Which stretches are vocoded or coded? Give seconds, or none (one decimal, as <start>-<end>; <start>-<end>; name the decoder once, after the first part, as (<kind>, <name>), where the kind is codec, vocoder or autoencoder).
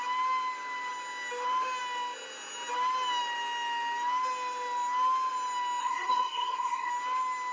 5.8-6.9 (codec, SNAC)